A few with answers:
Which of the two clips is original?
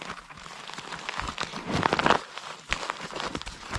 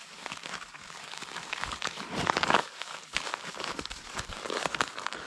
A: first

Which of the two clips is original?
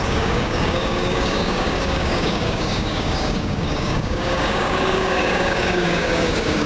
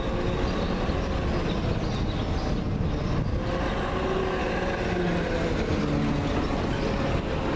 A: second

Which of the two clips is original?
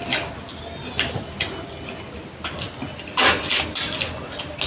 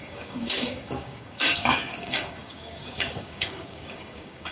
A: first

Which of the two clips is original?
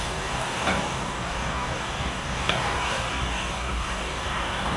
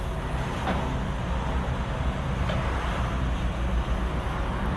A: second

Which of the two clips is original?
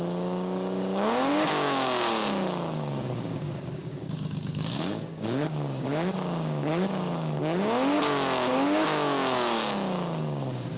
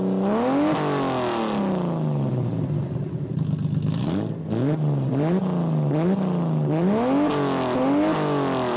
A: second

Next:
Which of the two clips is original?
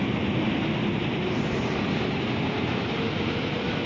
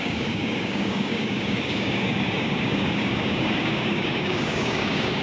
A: first